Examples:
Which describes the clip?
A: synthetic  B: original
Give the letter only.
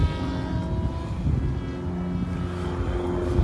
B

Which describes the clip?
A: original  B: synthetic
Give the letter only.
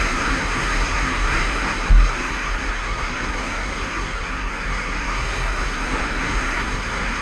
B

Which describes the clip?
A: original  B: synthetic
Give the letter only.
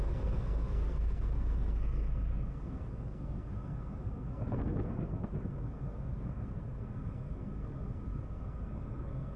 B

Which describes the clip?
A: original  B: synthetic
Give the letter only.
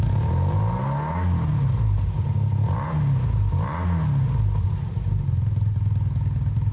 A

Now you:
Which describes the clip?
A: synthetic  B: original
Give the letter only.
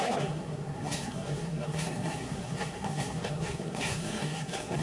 A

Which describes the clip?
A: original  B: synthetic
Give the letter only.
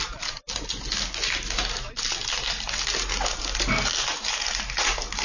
A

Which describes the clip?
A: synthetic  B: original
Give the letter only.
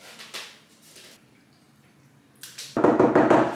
B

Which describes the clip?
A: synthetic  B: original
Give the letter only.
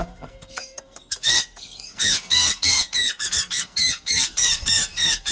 A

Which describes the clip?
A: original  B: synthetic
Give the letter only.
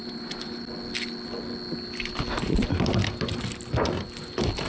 A